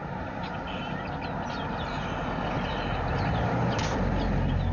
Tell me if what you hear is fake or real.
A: real